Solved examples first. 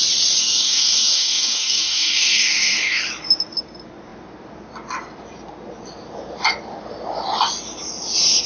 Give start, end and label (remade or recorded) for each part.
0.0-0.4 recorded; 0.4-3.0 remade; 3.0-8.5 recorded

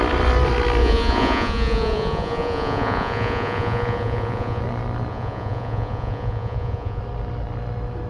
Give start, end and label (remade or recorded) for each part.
0.0-0.8 recorded; 0.8-4.6 remade; 4.6-5.1 recorded; 5.1-7.0 remade; 7.0-8.1 recorded

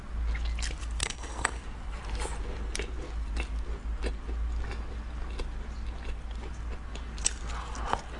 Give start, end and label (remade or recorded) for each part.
0.0-1.0 recorded; 1.0-1.6 remade; 1.6-8.2 recorded

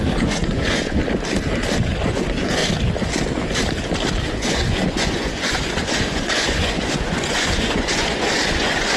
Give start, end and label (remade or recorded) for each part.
0.0-1.0 remade; 1.0-2.0 recorded; 2.0-2.6 remade; 2.6-4.3 recorded; 4.3-9.0 remade

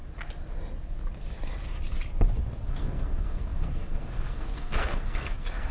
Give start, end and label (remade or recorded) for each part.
0.0-2.7 recorded; 2.7-5.7 remade

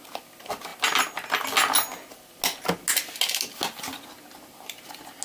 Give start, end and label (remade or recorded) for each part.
0.0-5.2 recorded